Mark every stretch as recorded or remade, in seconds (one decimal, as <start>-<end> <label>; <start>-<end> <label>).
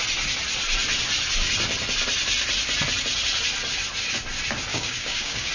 0.0-4.7 recorded; 4.7-5.5 remade